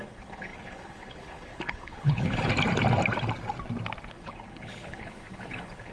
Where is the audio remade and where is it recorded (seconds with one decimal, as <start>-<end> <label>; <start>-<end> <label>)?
0.0-2.5 remade; 2.5-4.1 recorded; 4.1-5.9 remade